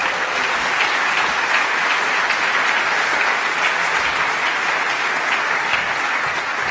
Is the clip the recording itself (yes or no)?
yes